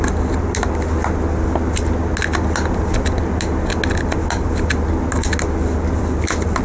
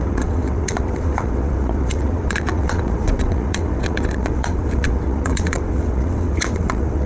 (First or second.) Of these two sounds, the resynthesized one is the second